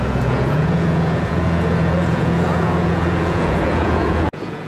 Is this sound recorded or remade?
remade